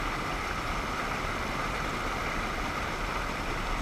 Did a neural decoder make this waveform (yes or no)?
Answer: no